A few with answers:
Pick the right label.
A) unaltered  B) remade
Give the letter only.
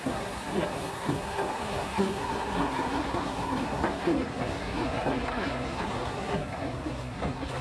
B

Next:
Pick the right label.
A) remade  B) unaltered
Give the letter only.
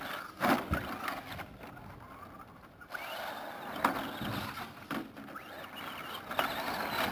B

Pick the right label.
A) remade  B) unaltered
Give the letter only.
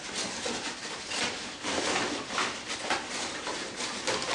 B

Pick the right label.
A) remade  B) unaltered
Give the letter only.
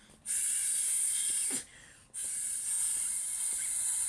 B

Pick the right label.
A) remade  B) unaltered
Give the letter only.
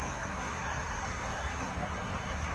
A